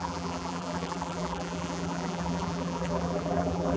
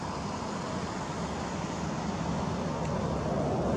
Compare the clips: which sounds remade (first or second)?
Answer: first